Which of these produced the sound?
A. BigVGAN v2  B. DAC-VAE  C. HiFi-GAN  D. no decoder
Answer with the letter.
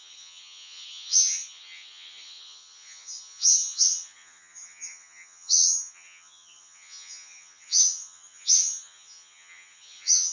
C